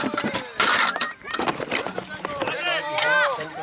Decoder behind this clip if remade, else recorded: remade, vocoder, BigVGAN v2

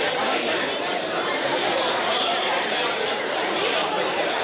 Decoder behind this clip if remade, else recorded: remade, vocoder, BigVGAN v2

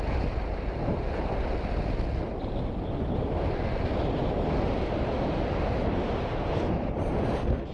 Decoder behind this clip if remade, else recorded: recorded